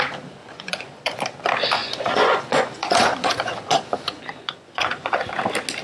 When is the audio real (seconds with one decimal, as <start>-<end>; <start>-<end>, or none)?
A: 0.0-0.4; 1.2-1.8; 5.3-5.8